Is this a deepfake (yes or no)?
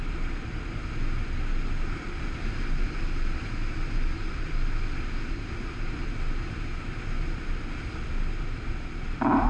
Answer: no